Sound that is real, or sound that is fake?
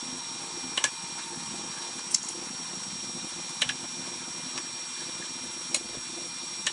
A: real